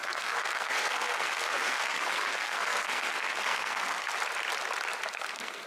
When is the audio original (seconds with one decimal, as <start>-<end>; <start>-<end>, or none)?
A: 4.1-5.1